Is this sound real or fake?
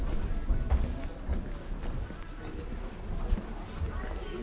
real